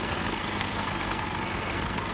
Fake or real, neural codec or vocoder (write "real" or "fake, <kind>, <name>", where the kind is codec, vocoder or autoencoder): fake, codec, SNAC